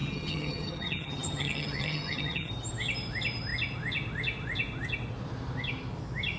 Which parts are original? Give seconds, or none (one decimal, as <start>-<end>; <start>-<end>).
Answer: 2.5-6.4

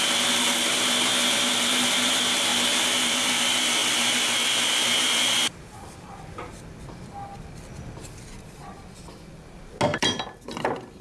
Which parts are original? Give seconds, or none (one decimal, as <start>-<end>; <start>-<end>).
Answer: 0.0-1.2; 2.1-2.5; 3.4-3.8; 6.6-9.9

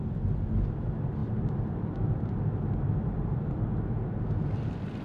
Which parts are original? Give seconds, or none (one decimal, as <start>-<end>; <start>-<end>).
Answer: 0.0-1.2; 4.2-5.0

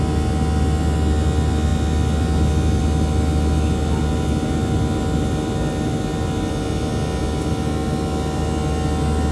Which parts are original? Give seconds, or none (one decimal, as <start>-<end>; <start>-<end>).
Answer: 0.0-9.3

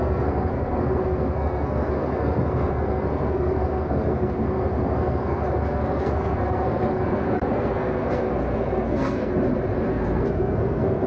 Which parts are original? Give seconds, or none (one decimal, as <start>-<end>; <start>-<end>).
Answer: 9.3-9.9

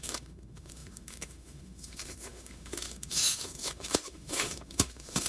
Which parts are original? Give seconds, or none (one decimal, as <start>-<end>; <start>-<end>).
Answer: none

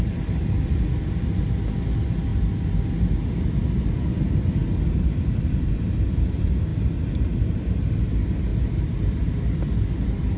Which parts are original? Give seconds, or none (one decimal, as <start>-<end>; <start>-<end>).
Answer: 0.0-4.6; 5.8-8.5; 9.2-10.4

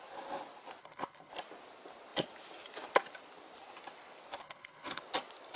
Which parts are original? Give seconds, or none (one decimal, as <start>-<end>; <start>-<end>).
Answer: 0.0-0.8; 1.3-4.4; 5.0-5.6